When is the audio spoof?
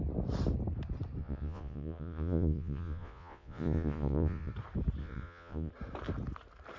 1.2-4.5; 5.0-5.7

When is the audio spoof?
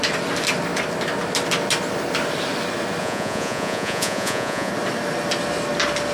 3.0-4.7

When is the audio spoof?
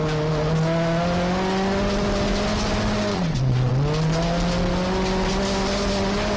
3.1-3.7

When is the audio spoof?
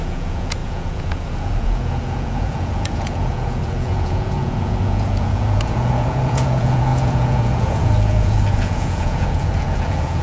0.0-10.2